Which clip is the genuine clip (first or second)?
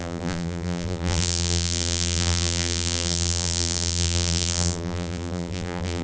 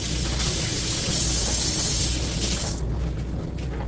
second